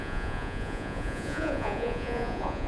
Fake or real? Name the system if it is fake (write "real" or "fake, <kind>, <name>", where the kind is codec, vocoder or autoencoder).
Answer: fake, vocoder, Vocos